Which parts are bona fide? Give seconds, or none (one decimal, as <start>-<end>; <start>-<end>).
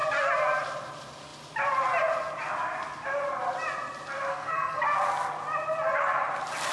0.0-4.3; 4.8-6.7